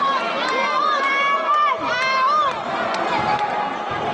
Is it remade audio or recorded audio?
recorded